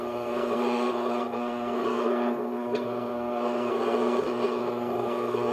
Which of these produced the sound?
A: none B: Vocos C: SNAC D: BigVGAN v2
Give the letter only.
C